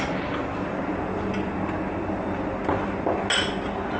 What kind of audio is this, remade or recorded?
recorded